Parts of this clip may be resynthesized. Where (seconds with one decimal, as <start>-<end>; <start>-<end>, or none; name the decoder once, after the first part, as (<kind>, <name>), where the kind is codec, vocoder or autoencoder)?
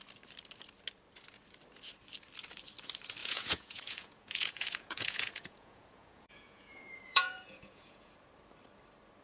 3.2-8.1 (vocoder, Vocos)